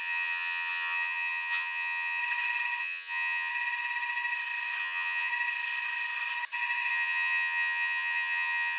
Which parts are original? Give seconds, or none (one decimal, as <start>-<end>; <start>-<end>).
2.2-2.8; 3.5-4.8; 5.3-6.9